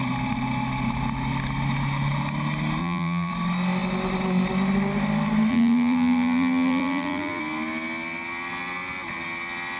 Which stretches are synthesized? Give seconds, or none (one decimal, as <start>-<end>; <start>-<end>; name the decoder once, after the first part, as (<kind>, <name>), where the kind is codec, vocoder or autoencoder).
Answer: 2.8-3.3 (vocoder, BigVGAN v2); 5.5-7.4

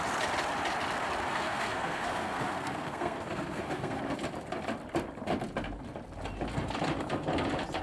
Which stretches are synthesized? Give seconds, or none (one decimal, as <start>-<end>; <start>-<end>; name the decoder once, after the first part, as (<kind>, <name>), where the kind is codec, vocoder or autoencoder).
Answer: 1.3-4.0 (codec, SNAC)